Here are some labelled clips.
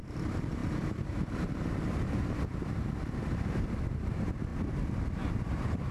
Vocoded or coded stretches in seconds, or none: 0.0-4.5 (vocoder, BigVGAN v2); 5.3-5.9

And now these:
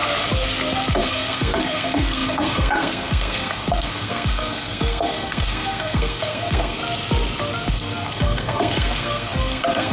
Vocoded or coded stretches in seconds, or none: 1.0-6.8 (codec, SNAC); 7.7-9.9

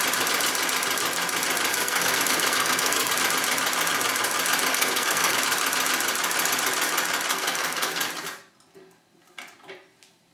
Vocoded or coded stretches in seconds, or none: 1.7-3.1 (codec, SNAC); 4.7-5.4; 7.3-8.0

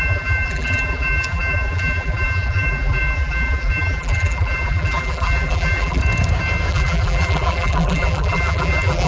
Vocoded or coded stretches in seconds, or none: 0.0-6.0 (vocoder, BigVGAN v2); 6.7-9.1

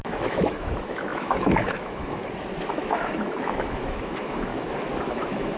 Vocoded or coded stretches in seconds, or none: 0.0-2.2 (autoencoder, DAC-VAE); 2.7-4.5; 5.1-5.6

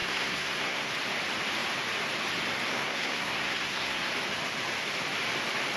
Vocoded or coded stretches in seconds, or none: 0.0-0.9 (codec, SNAC); 2.7-4.1